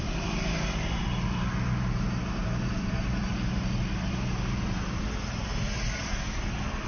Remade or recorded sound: recorded